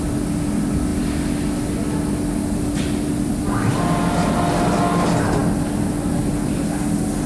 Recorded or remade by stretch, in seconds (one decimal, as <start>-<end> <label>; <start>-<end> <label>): 0.0-5.4 remade; 5.4-6.2 recorded; 6.2-7.3 remade